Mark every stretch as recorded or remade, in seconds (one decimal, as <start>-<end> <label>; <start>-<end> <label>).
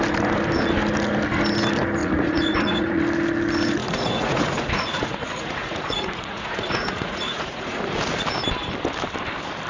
0.0-2.0 recorded; 2.0-3.0 remade; 3.0-3.8 recorded; 3.8-7.8 remade; 7.8-9.7 recorded